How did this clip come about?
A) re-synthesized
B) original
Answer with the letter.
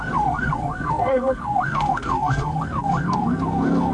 A